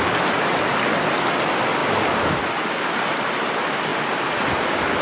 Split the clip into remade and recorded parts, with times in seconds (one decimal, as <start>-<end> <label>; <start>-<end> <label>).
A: 0.0-5.0 recorded